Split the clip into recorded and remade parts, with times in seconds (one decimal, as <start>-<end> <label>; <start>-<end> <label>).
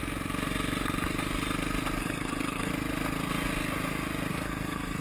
0.0-2.0 recorded; 2.0-2.7 remade; 2.7-4.3 recorded; 4.3-5.0 remade